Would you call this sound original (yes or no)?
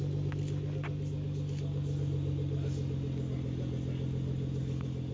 yes